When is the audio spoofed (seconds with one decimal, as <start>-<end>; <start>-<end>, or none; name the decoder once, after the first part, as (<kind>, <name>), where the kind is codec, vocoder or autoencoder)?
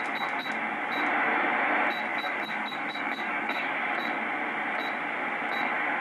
2.1-3.7 (codec, DAC)